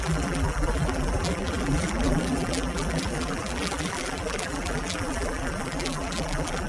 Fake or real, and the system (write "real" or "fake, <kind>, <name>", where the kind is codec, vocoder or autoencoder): fake, vocoder, BigVGAN v2